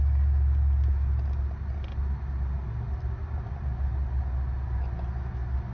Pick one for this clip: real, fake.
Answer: real